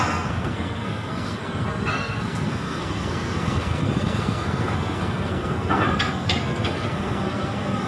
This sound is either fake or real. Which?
fake